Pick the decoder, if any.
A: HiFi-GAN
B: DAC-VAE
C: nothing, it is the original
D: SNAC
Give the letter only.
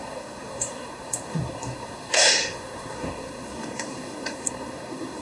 D